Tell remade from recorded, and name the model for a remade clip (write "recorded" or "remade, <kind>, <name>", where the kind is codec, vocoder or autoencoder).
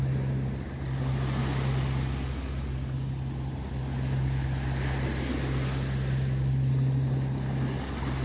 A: recorded